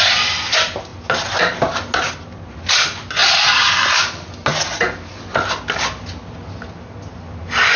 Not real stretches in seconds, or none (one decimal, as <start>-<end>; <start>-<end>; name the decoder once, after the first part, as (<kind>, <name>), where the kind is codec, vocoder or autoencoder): none